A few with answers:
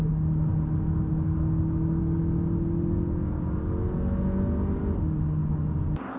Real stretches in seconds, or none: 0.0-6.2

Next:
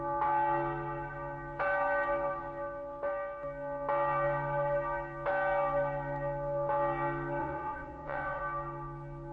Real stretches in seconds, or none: 0.0-7.4; 8.4-9.3

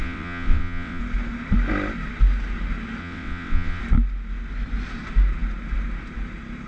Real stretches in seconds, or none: 1.0-3.0; 3.8-6.7

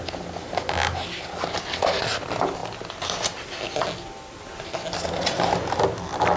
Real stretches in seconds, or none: 0.0-6.4